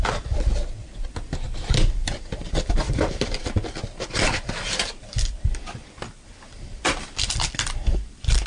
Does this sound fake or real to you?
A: fake